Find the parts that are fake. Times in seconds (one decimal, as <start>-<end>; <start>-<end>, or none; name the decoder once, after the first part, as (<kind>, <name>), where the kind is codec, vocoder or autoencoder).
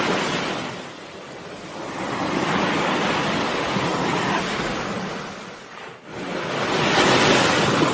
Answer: 3.9-4.7 (vocoder, BigVGAN v2)